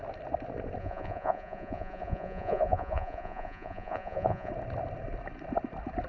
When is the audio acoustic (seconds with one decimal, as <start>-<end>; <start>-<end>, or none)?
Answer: 0.0-0.8; 4.5-6.1